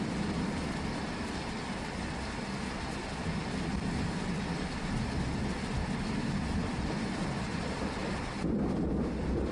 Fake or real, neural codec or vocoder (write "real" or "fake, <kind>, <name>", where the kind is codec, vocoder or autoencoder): real